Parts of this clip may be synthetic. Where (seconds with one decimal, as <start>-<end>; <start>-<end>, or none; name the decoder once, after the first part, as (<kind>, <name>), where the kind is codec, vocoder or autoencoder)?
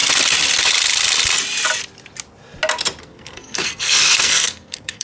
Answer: 3.0-5.0 (codec, SNAC)